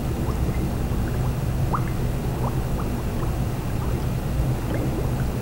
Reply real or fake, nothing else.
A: real